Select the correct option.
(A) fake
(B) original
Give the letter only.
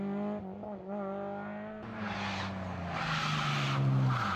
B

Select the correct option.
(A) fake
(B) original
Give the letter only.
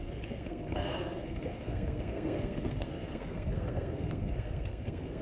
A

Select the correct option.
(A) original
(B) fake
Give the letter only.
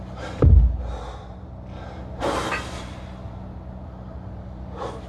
A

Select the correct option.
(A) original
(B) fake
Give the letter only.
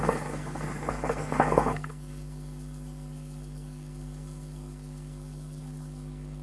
B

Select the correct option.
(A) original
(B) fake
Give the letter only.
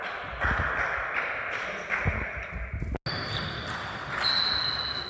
A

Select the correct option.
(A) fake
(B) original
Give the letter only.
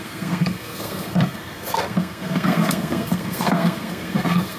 A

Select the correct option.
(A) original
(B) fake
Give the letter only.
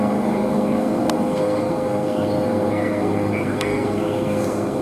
B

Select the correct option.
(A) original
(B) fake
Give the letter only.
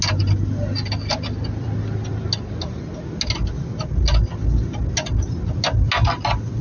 A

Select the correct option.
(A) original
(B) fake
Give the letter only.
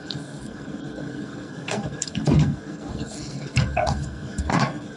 B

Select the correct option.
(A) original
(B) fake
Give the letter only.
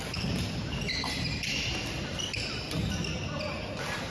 A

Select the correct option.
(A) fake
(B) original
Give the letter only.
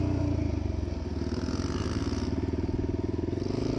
B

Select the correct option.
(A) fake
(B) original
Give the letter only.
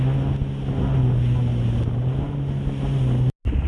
B